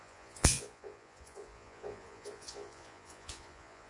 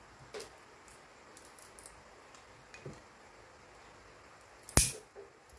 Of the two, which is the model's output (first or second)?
first